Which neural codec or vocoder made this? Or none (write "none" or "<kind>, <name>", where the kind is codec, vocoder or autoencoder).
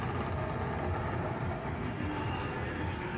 none